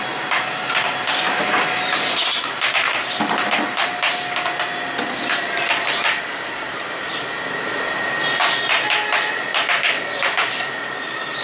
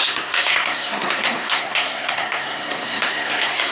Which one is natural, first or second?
first